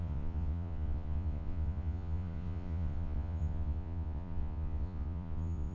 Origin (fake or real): fake